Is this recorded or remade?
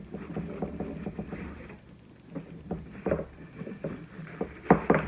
recorded